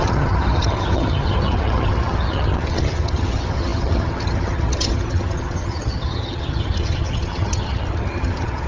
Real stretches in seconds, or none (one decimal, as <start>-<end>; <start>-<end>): none